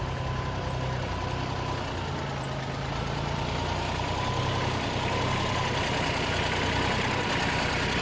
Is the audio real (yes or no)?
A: yes